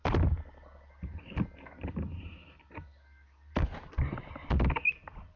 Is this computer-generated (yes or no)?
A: no